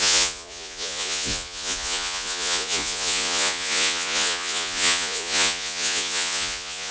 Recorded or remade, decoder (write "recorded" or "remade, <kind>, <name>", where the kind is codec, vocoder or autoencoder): remade, vocoder, Vocos